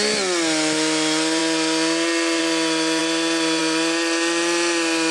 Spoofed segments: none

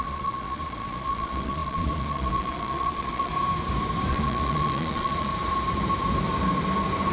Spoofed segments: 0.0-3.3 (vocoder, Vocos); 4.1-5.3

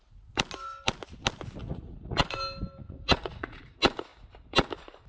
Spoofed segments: 1.6-2.2 (vocoder, Vocos); 2.8-3.6

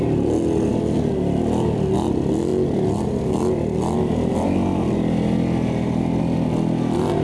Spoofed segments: none

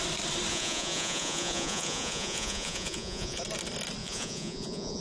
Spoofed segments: 0.5-3.4 (vocoder, Vocos); 4.0-5.0

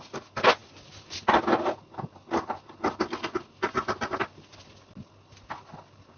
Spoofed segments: none

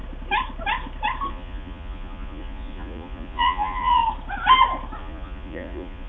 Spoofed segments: 1.3-4.0 (vocoder, Vocos); 5.0-6.1

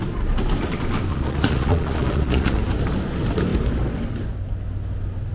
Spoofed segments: 1.1-2.6 (vocoder, Vocos)